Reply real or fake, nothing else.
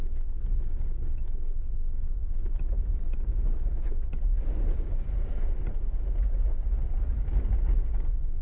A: real